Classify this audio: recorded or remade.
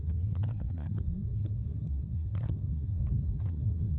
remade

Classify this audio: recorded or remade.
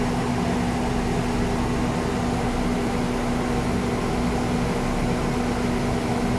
recorded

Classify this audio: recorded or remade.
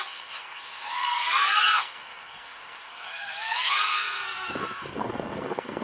remade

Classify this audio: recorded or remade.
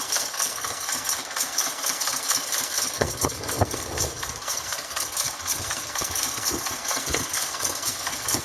remade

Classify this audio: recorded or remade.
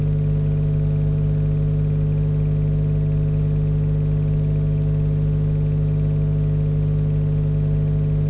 recorded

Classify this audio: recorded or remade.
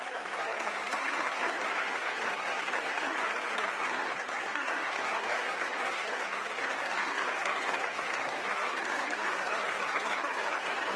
remade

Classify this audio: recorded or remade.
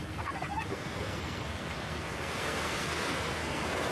remade